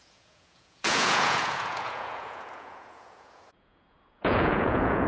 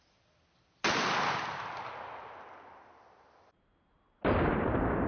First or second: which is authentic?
second